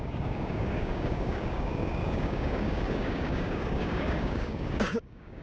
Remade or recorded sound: remade